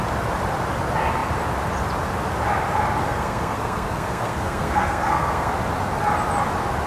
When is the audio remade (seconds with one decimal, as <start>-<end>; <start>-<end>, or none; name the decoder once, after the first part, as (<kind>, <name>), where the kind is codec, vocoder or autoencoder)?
3.0-5.5 (codec, SNAC)